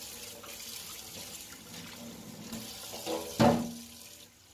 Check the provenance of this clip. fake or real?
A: real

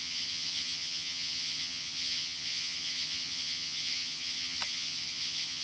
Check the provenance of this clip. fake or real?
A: fake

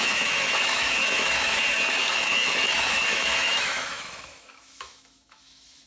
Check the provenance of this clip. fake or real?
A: fake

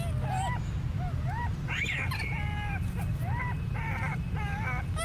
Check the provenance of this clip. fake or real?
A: real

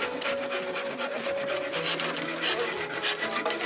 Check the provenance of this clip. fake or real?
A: real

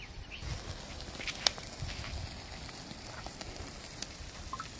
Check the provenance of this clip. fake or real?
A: real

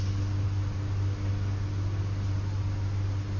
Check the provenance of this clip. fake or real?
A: real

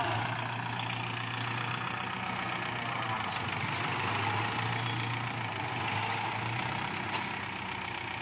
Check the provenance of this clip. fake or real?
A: real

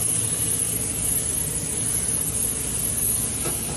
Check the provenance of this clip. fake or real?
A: real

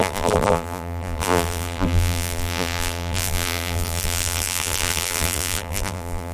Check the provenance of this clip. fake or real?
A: fake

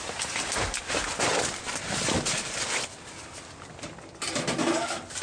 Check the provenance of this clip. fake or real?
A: real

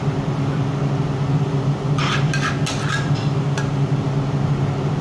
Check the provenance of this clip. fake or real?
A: real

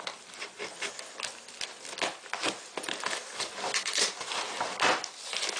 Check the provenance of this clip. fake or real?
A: real